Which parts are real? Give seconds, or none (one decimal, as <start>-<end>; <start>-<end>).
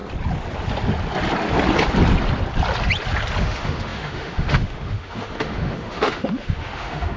0.0-3.4